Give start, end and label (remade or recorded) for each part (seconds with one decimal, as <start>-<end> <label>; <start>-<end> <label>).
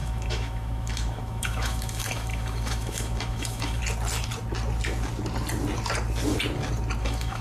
0.0-3.8 remade; 3.8-7.0 recorded; 7.0-7.4 remade